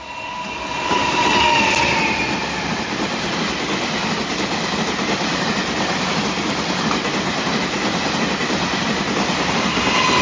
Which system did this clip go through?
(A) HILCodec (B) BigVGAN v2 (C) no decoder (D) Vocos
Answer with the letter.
C